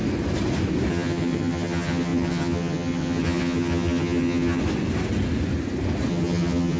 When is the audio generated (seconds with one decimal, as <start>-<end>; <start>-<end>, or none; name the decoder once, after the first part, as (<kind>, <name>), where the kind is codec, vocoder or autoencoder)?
0.9-4.6 (vocoder, HiFi-GAN); 6.1-6.8